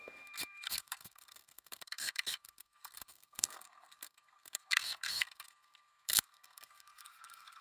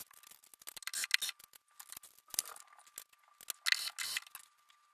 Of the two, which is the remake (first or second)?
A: first